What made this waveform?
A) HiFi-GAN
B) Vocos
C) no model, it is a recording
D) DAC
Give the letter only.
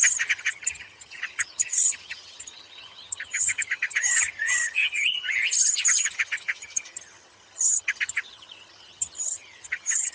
A